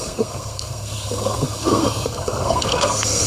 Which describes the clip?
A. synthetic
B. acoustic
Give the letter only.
A